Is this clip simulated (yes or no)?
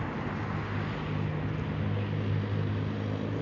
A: no